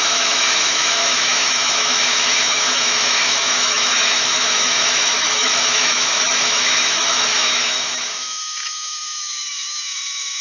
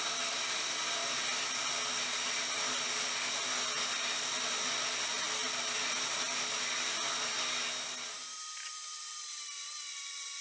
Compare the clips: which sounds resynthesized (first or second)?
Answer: first